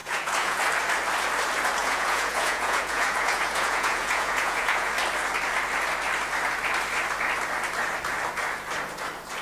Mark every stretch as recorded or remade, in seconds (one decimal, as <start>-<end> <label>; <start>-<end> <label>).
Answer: 0.0-0.6 remade; 0.6-1.8 recorded; 1.8-4.9 remade; 4.9-9.4 recorded